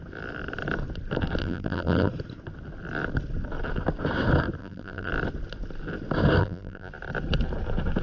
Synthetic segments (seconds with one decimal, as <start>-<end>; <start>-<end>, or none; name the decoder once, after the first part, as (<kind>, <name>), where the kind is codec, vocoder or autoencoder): 1.4-2.1 (vocoder, BigVGAN v2); 4.6-5.1; 6.4-6.9